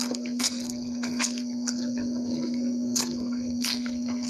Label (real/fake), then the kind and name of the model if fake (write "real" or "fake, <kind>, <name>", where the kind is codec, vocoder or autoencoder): fake, codec, SNAC